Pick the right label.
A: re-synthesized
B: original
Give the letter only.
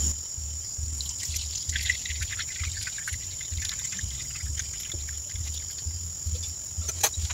B